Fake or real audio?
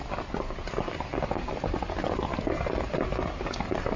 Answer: real